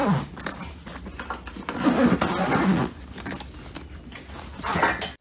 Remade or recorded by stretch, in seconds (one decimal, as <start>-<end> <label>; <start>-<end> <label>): 0.0-5.2 recorded